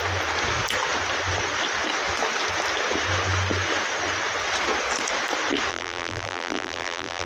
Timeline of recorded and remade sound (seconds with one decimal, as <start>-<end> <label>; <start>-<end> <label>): 0.0-5.7 recorded; 5.7-7.3 remade